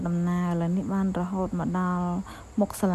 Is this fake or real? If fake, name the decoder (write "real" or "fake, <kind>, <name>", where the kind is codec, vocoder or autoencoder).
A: real